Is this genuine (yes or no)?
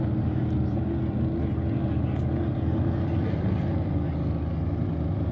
yes